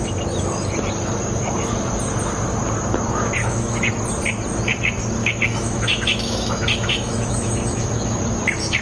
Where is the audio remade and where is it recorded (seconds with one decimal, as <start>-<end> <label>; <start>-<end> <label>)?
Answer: 0.0-3.4 recorded; 3.4-3.9 remade; 3.9-5.2 recorded; 5.2-8.2 remade; 8.2-8.8 recorded